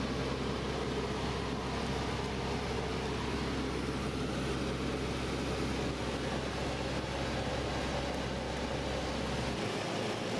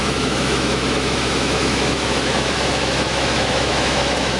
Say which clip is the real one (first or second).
first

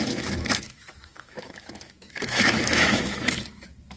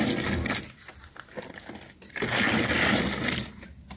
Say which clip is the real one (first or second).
second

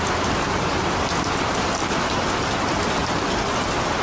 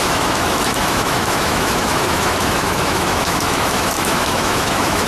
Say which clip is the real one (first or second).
first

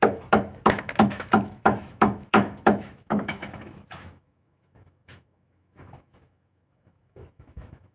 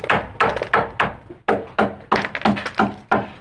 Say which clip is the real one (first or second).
second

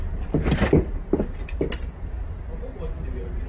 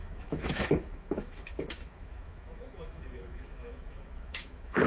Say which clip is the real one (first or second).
first